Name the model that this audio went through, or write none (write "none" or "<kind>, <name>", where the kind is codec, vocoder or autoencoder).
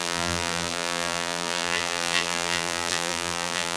vocoder, BigVGAN v2